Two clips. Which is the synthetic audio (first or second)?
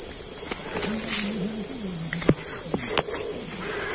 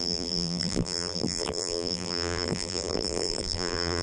second